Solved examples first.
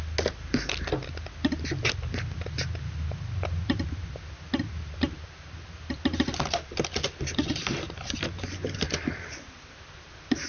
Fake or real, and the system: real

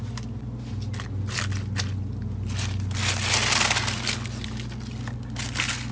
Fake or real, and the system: real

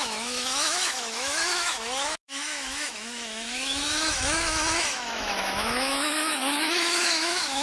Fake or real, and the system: fake, autoencoder, DAC-VAE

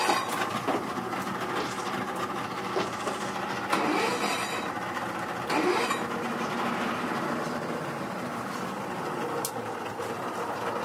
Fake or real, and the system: real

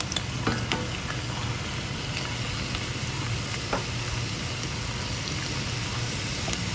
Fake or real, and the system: real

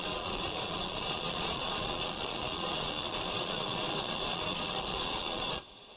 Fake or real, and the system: fake, vocoder, Vocos